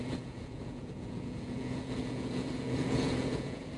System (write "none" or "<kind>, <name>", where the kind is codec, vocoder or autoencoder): vocoder, Vocos